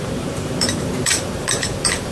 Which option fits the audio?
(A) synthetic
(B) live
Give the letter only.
A